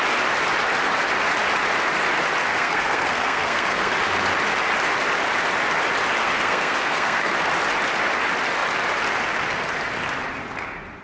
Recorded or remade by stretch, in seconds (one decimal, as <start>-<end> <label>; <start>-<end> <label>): 0.0-2.5 recorded; 2.5-3.9 remade; 3.9-6.2 recorded; 6.2-7.3 remade; 7.3-11.0 recorded